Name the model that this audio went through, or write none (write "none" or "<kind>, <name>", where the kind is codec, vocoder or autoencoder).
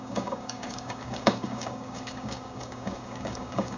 codec, DAC